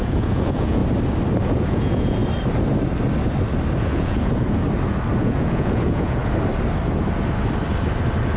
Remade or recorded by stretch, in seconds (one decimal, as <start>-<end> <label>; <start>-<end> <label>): 0.0-0.8 remade; 0.8-1.4 recorded; 1.4-2.2 remade; 2.2-3.8 recorded; 3.8-4.6 remade; 4.6-5.2 recorded; 5.2-6.2 remade; 6.2-8.4 recorded